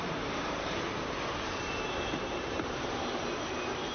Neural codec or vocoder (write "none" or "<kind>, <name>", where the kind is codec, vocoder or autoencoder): vocoder, BigVGAN v2